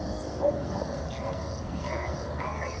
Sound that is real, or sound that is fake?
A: fake